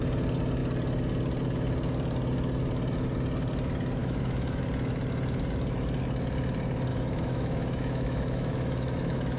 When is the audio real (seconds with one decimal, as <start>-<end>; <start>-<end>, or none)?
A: 0.0-4.0; 4.6-6.9

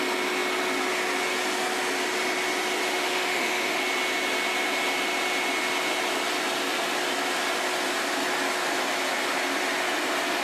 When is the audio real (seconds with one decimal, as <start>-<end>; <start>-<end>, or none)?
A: 0.0-2.8; 3.8-10.4

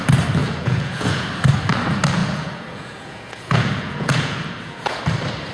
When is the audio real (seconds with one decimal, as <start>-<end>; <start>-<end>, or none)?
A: 0.0-0.4; 1.3-2.2; 5.0-5.5

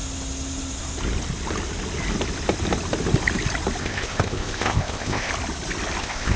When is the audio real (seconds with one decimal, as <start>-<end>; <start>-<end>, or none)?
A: 0.0-3.8; 5.3-6.0

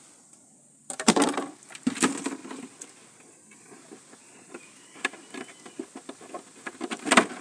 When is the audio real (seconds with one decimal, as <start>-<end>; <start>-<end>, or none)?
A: 0.0-7.4

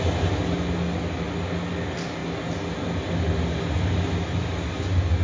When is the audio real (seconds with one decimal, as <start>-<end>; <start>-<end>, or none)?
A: 0.0-5.2

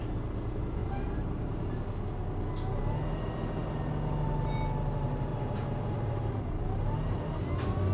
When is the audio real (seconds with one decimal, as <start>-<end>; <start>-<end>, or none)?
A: 0.0-0.8; 1.6-5.3; 6.4-7.9